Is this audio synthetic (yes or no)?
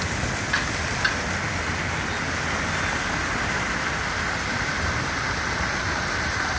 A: no